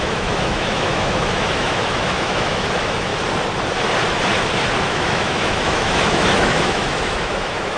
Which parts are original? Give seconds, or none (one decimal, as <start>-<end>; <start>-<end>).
3.1-4.8